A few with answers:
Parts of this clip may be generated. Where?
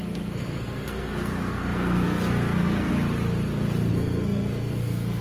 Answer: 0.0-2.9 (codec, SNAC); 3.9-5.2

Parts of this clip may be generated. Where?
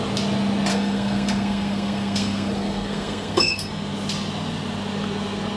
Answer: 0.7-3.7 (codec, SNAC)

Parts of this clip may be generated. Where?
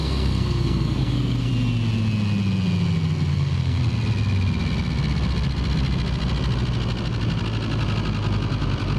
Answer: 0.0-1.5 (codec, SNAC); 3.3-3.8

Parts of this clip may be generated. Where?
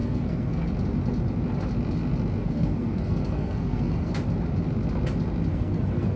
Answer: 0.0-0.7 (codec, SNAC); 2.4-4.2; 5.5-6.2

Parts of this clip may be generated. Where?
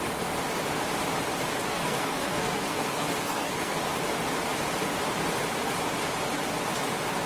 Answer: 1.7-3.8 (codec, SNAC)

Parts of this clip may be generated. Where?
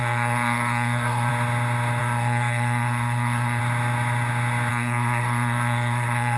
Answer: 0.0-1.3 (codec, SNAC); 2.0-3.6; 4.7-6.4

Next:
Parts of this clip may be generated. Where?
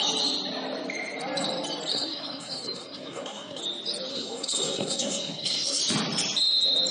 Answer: 1.9-3.6 (codec, SNAC); 4.1-5.8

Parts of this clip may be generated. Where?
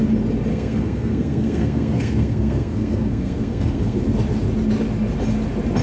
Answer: 0.5-4.0 (codec, SNAC)